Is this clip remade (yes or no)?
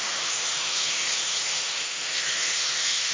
yes